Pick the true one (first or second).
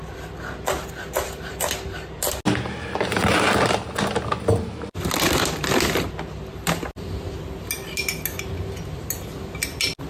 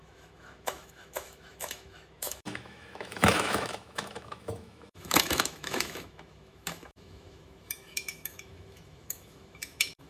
first